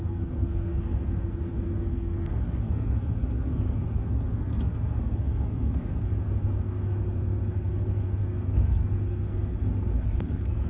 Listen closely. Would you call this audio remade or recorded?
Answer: remade